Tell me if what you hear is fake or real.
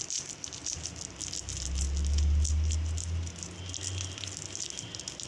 real